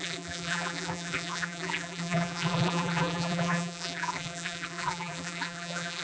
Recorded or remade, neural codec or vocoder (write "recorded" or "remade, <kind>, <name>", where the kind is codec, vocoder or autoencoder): remade, vocoder, BigVGAN v2